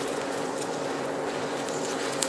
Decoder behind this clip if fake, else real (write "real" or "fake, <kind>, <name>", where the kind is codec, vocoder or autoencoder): fake, vocoder, Vocos